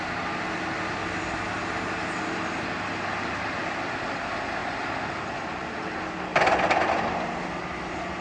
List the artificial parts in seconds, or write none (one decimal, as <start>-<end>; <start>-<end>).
none